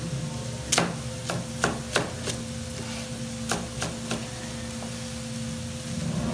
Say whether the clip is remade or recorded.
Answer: recorded